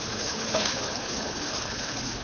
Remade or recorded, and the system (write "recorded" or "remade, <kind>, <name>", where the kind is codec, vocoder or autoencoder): remade, codec, HILCodec